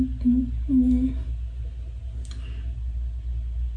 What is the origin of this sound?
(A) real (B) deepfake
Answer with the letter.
A